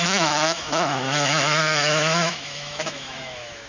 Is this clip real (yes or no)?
no